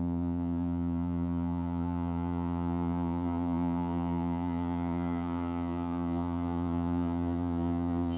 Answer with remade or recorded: remade